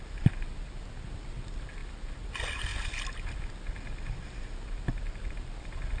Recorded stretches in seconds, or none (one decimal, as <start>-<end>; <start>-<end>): 0.0-6.0